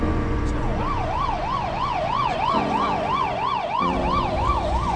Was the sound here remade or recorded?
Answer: remade